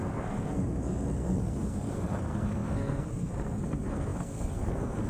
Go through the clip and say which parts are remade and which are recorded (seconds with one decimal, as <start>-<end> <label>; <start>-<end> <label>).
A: 0.0-5.1 remade